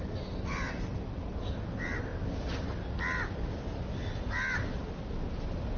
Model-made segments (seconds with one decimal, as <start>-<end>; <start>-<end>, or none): none

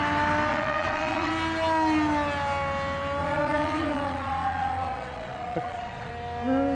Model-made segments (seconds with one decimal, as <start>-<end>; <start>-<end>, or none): 0.5-1.3; 3.2-6.1